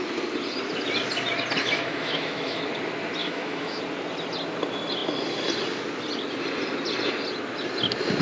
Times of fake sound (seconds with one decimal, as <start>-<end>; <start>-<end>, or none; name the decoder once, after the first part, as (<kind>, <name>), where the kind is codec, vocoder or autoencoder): 1.6-2.6 (autoencoder, DAC-VAE); 3.2-3.8